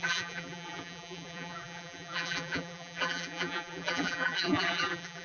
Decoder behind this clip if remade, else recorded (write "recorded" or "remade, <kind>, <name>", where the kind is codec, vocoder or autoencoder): remade, vocoder, BigVGAN v2